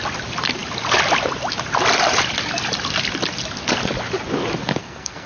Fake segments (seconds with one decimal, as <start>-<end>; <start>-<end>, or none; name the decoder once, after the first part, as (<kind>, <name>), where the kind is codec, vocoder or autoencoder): 4.8-5.3 (codec, SNAC)